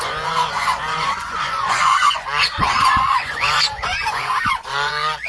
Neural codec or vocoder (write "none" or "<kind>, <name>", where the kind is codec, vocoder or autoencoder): vocoder, Vocos